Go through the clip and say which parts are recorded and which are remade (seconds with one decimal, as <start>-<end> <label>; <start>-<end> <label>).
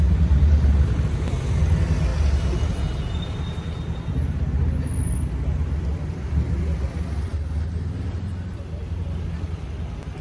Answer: 0.0-10.2 recorded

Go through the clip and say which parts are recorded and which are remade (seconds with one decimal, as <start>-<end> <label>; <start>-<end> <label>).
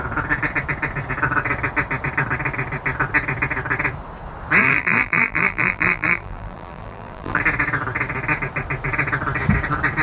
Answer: 0.0-4.6 recorded; 4.6-7.4 remade; 7.4-10.0 recorded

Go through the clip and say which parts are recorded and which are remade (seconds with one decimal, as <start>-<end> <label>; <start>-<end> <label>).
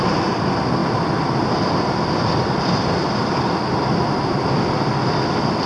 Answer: 0.0-5.7 recorded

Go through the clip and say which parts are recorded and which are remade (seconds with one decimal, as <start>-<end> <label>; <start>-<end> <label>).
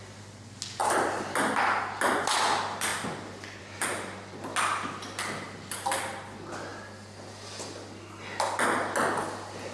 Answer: 0.0-0.8 recorded; 0.8-1.4 remade; 1.4-9.7 recorded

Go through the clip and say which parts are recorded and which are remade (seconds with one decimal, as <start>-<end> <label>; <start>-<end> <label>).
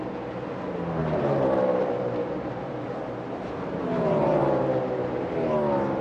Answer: 0.0-1.0 recorded; 1.0-4.6 remade; 4.6-6.0 recorded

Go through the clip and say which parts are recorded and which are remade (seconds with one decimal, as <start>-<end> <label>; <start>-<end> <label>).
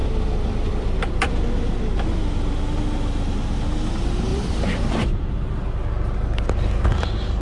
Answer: 0.0-1.8 remade; 1.8-4.3 recorded; 4.3-5.6 remade; 5.6-7.4 recorded